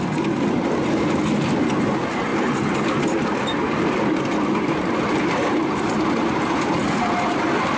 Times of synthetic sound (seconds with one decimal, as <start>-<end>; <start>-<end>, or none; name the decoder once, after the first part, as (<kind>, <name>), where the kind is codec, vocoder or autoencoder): none